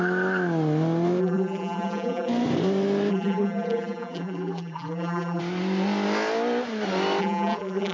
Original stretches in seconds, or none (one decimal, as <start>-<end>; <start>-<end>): 0.0-1.2; 2.3-3.1; 5.4-7.2